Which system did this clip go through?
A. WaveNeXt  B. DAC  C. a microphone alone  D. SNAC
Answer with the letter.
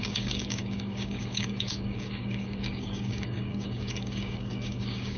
B